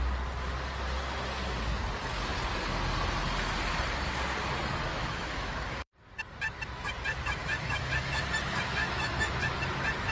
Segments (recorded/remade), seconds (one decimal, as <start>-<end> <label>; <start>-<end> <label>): 0.0-4.9 recorded; 4.9-5.7 remade; 5.7-7.4 recorded; 7.4-8.2 remade; 8.2-8.8 recorded; 8.8-9.4 remade; 9.4-10.1 recorded